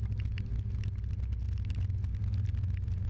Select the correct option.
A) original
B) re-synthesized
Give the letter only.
A